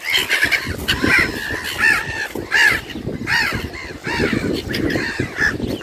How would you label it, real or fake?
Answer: real